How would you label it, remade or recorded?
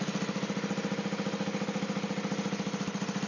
recorded